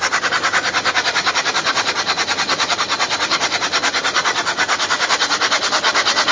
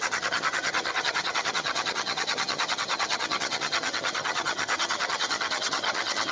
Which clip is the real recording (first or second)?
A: first